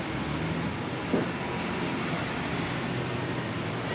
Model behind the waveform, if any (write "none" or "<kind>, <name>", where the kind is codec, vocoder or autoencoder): none